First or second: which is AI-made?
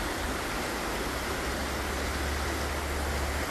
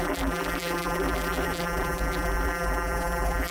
second